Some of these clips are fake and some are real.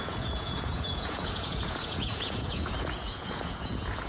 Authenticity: fake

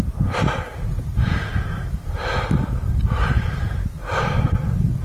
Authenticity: fake